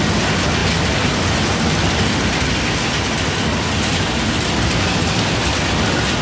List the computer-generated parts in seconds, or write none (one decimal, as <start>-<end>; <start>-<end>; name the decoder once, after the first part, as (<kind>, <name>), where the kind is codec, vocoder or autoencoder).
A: none